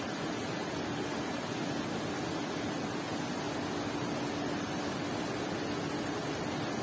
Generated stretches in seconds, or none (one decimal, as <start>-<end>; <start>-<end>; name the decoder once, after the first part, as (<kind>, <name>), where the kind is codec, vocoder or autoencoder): none